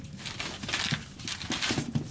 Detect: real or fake real